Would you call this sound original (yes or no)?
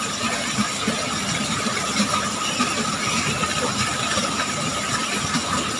yes